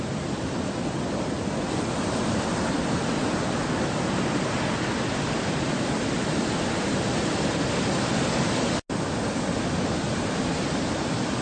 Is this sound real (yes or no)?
yes